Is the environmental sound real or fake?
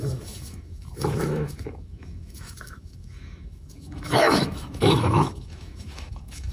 fake